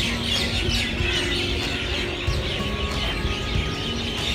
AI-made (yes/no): no